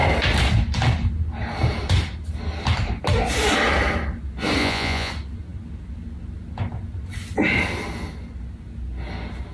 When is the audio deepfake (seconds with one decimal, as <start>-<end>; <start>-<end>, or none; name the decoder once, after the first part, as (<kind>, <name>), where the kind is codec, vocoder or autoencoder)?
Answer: 4.6-5.1 (vocoder, Vocos)